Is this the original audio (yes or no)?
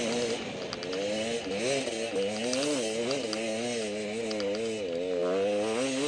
yes